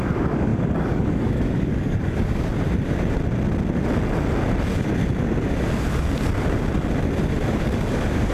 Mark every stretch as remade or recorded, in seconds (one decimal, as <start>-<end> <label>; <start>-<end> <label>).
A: 0.0-2.5 remade; 2.5-7.5 recorded; 7.5-8.3 remade